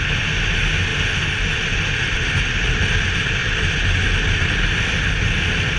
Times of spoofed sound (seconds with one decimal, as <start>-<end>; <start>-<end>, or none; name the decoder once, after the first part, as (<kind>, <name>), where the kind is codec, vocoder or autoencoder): none